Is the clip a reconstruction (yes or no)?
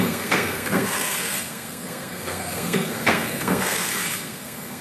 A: yes